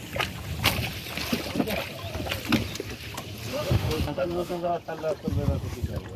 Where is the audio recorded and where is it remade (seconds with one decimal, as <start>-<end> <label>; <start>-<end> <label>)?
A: 0.0-3.5 recorded; 3.5-4.7 remade; 4.7-6.2 recorded